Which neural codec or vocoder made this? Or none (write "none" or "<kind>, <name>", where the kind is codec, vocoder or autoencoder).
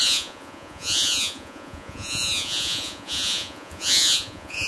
vocoder, Vocos